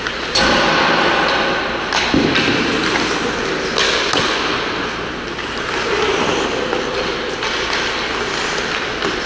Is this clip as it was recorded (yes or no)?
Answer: yes